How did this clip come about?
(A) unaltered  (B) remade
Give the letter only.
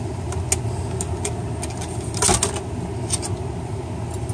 A